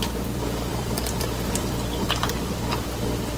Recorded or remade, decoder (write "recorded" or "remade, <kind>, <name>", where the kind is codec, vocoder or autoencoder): remade, vocoder, BigVGAN v2